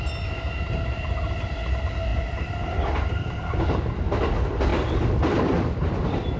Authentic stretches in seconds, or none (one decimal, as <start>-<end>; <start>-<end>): 0.0-2.1; 3.4-4.7; 5.8-6.4